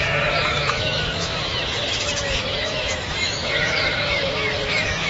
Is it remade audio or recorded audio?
remade